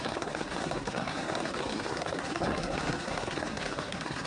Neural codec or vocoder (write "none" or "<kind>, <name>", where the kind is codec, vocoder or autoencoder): codec, SNAC